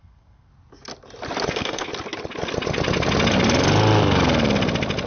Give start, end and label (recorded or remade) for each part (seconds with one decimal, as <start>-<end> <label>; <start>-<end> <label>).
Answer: 0.0-0.5 remade; 0.5-1.5 recorded; 1.5-1.9 remade; 1.9-5.1 recorded